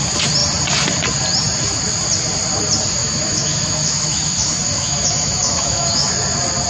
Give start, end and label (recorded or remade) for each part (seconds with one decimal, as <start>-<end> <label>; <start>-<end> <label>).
0.0-3.0 recorded; 3.0-6.1 remade; 6.1-6.7 recorded

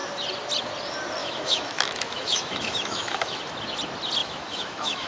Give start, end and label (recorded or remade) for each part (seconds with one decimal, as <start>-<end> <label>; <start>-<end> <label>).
0.0-1.2 recorded; 1.2-3.4 remade; 3.4-4.2 recorded; 4.2-5.1 remade

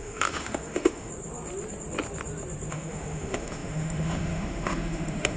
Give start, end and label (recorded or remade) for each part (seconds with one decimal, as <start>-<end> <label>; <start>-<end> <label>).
0.0-1.1 remade; 1.1-2.7 recorded; 2.7-5.4 remade

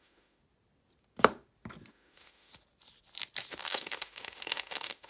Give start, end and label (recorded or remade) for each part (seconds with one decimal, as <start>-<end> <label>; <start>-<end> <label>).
0.0-0.4 remade; 0.4-1.9 recorded; 1.9-2.5 remade; 2.5-3.5 recorded; 3.5-5.1 remade